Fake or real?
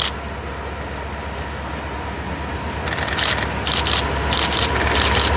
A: real